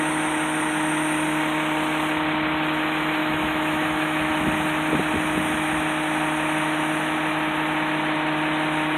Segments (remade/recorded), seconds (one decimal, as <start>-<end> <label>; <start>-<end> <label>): 0.0-3.2 recorded; 3.2-4.3 remade; 4.3-9.0 recorded